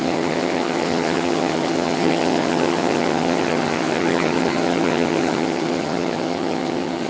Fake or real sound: fake